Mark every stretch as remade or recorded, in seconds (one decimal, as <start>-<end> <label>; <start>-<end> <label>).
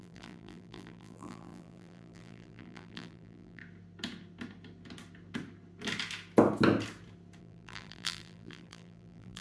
0.0-3.6 remade; 3.6-7.4 recorded; 7.4-9.4 remade